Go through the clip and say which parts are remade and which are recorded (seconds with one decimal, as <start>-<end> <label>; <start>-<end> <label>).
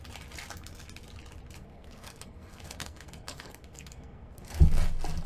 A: 0.0-1.6 recorded; 1.6-4.8 remade; 4.8-5.3 recorded